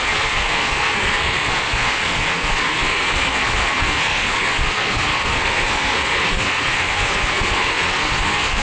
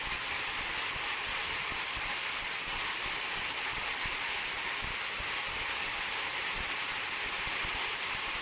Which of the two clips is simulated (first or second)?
first